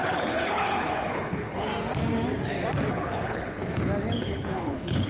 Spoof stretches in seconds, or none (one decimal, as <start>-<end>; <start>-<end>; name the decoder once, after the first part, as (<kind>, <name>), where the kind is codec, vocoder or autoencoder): 0.0-1.7 (codec, HILCodec); 2.9-3.6; 4.2-5.1